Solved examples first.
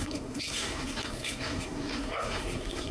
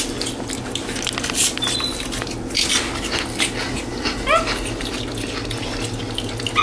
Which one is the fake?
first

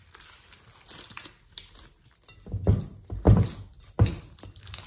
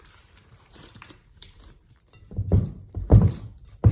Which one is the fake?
second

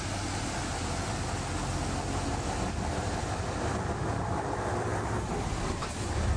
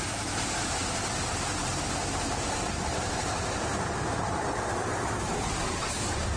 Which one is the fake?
second